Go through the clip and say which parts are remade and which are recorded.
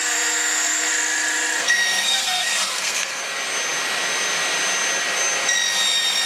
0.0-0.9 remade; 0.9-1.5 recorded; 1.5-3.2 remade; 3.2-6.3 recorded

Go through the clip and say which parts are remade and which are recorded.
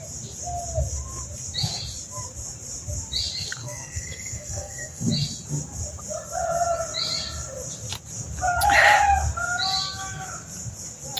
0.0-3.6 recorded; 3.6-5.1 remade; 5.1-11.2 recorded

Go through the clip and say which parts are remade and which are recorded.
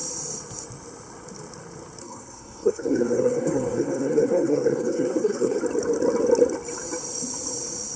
0.0-2.0 recorded; 2.0-5.6 remade; 5.6-8.0 recorded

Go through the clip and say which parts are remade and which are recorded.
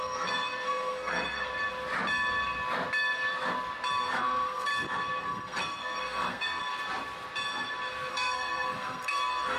0.0-1.5 remade; 1.5-4.0 recorded; 4.0-4.7 remade; 4.7-5.2 recorded; 5.2-6.6 remade; 6.6-8.1 recorded; 8.1-9.6 remade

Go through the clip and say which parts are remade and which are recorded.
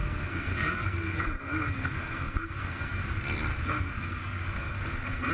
0.0-3.0 remade; 3.0-3.5 recorded; 3.5-5.3 remade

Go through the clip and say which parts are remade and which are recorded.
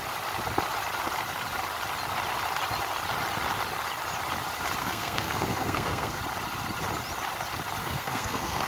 0.0-4.8 recorded; 4.8-6.2 remade; 6.2-7.8 recorded; 7.8-8.7 remade